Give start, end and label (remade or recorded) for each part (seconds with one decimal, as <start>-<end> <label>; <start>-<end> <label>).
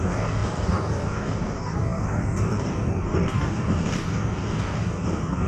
0.0-5.5 remade